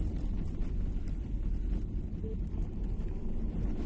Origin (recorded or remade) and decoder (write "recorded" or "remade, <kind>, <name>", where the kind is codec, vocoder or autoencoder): recorded